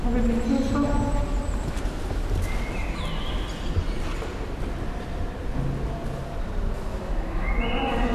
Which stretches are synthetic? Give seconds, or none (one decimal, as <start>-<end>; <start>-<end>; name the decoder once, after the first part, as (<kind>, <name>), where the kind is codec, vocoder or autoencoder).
6.9-7.5 (autoencoder, DAC-VAE)